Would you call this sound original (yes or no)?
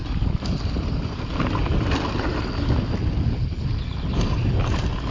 yes